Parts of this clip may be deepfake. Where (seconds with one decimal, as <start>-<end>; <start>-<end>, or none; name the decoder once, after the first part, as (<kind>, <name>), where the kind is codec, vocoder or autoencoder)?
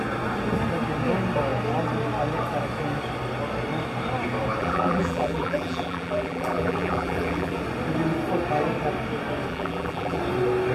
4.6-7.6 (vocoder, BigVGAN v2); 9.5-10.2